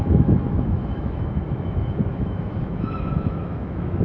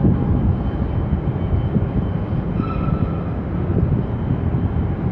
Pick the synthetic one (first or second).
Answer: first